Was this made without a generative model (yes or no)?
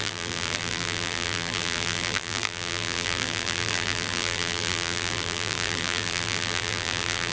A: no